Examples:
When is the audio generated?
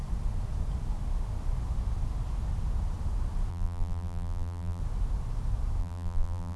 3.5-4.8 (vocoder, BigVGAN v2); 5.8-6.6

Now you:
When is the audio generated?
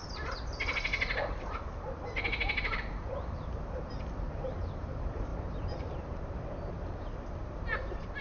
2.6-8.2 (vocoder, BigVGAN v2)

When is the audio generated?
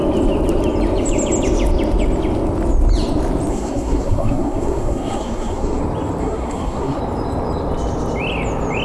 3.5-5.8 (codec, SNAC); 6.2-7.0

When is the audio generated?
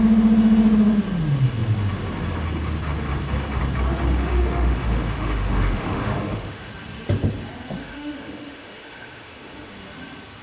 4.2-6.7 (autoencoder, DAC-VAE); 7.8-9.8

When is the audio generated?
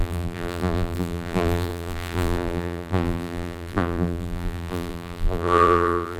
0.0-6.2 (vocoder, BigVGAN v2)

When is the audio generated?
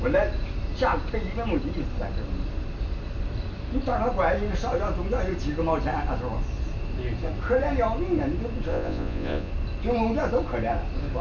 8.7-9.5 (vocoder, Vocos)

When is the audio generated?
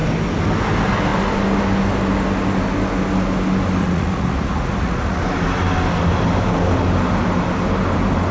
3.8-5.2 (vocoder, Vocos)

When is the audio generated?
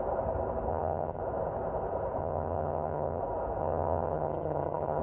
0.7-1.2 (vocoder, HiFi-GAN); 2.2-3.2; 3.6-5.0